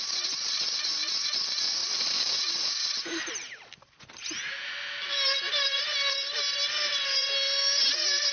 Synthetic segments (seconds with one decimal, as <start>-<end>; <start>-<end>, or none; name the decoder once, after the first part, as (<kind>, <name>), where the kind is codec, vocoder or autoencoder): 1.8-3.5 (vocoder, BigVGAN v2)